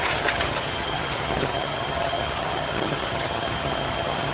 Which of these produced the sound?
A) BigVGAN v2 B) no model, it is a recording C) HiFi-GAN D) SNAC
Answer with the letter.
C